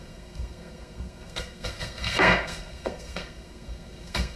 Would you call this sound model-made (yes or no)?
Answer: yes